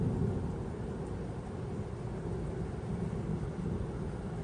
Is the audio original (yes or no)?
yes